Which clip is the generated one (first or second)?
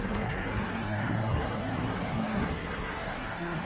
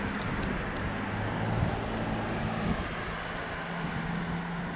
first